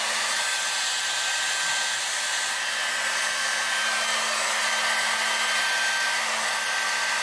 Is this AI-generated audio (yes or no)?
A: no